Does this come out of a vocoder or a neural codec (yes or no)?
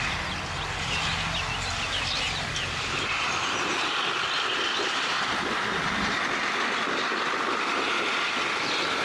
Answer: no